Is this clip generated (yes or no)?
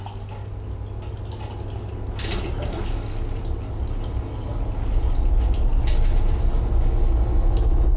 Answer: no